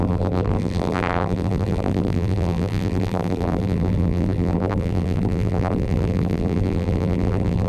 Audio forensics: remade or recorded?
remade